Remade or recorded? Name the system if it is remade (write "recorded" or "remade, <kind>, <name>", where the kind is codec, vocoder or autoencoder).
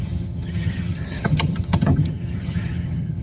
remade, vocoder, HiFi-GAN